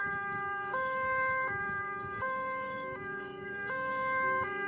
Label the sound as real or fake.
fake